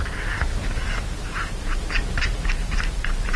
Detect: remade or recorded recorded